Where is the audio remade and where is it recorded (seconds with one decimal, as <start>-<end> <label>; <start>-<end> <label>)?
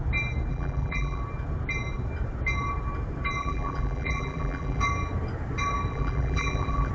0.0-0.5 recorded; 0.5-1.2 remade; 1.2-3.4 recorded; 3.4-4.8 remade; 4.8-5.9 recorded; 5.9-6.9 remade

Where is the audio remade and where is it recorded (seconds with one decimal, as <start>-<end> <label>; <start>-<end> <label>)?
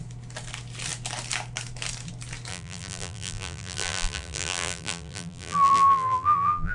0.0-2.5 recorded; 2.5-6.7 remade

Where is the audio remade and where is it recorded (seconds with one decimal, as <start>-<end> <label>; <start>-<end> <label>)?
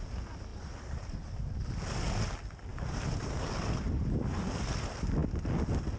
0.0-0.5 recorded; 0.5-1.5 remade; 1.5-2.7 recorded; 2.7-4.4 remade; 4.4-6.0 recorded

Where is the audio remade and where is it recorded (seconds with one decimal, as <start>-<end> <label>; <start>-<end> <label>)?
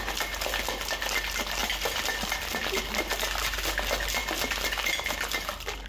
0.0-1.6 recorded; 1.6-2.5 remade; 2.5-5.9 recorded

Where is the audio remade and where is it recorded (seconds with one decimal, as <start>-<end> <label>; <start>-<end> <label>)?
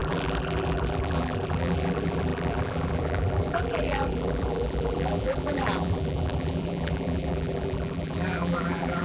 0.0-9.0 remade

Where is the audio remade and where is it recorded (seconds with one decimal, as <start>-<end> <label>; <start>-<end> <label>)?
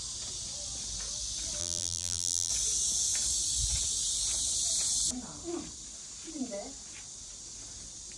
0.0-1.6 recorded; 1.6-2.5 remade; 2.5-8.2 recorded